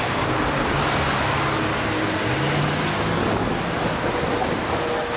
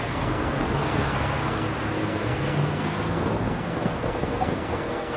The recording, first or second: first